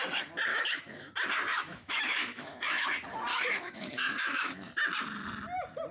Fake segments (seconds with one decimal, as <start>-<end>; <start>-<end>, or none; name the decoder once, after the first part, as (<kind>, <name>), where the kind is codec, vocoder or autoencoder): 0.5-1.1 (autoencoder, DAC-VAE); 1.5-2.9; 3.3-4.7